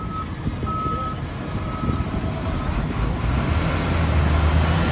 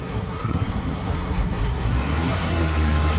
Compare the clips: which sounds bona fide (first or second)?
first